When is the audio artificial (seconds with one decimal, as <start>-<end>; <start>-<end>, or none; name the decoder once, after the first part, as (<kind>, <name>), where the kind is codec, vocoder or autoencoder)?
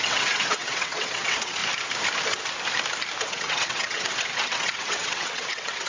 0.0-1.6 (vocoder, WaveNeXt); 3.3-5.9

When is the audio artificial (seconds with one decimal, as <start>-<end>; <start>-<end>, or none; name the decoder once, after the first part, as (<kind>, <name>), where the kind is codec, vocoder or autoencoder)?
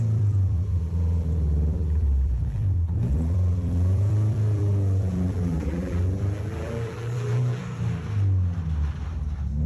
0.0-7.6 (vocoder, BigVGAN v2)